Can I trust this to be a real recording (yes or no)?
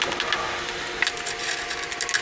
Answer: yes